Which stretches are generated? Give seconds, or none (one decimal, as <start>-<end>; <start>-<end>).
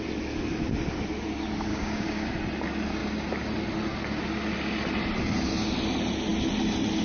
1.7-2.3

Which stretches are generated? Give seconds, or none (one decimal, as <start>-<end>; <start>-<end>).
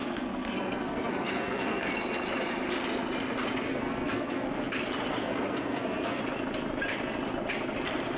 0.0-1.9; 3.7-4.7; 5.2-6.2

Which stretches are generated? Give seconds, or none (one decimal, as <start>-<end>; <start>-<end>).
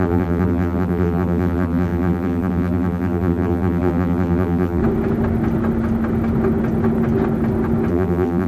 0.0-4.8; 7.9-8.5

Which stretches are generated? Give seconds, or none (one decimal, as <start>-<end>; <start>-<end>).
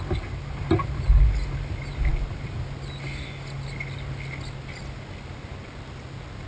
none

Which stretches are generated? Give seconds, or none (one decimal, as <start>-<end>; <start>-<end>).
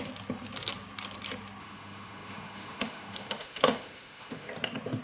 1.6-4.5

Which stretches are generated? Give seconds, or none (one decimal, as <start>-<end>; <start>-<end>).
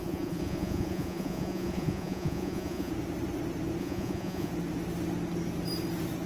0.0-2.9; 3.8-4.5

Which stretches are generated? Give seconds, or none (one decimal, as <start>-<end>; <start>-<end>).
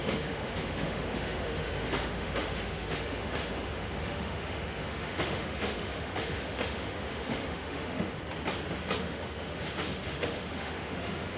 0.0-8.2; 9.0-11.4